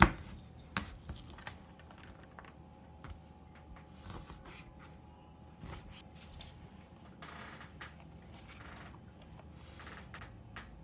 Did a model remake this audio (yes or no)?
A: no